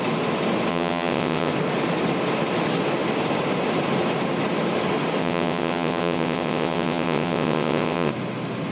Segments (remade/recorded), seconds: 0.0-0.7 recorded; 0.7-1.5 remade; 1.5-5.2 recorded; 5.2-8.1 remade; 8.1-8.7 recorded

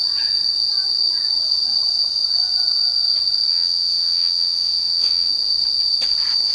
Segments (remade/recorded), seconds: 0.0-3.5 recorded; 3.5-5.3 remade; 5.3-6.5 recorded

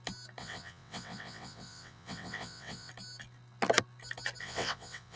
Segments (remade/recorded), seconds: 0.0-0.4 recorded; 0.4-2.9 remade; 2.9-4.4 recorded; 4.4-5.2 remade

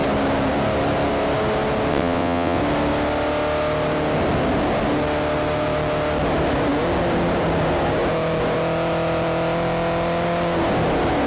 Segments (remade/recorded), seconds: 0.0-1.9 recorded; 1.9-2.6 remade; 2.6-11.3 recorded